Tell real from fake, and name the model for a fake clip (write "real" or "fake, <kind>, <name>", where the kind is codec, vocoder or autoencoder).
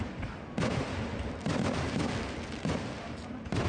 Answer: real